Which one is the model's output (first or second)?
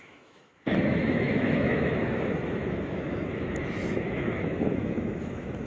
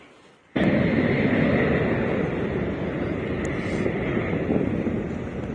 first